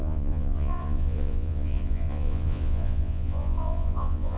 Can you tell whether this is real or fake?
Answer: fake